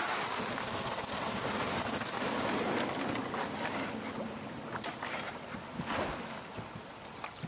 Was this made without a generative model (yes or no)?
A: yes